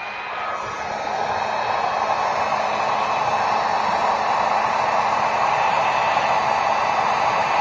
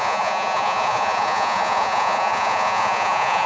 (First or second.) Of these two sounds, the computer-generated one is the second